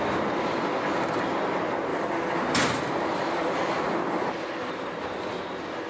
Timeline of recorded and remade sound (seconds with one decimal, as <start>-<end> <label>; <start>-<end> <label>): 0.0-1.9 recorded; 1.9-5.4 remade; 5.4-5.9 recorded